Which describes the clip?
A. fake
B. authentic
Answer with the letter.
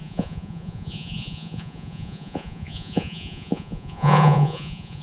A